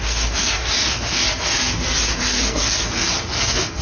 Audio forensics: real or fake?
fake